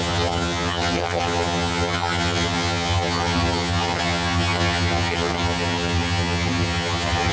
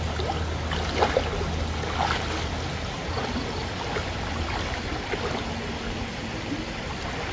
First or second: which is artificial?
first